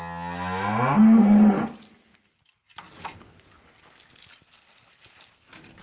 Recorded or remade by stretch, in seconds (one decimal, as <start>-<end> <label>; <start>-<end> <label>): 0.0-5.8 recorded